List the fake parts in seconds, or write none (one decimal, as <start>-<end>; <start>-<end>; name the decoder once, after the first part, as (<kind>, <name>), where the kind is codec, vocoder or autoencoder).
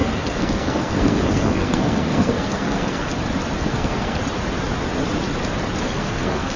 0.0-3.1 (codec, SNAC); 3.7-4.2; 5.8-6.6